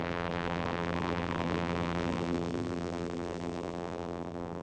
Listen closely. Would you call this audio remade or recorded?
remade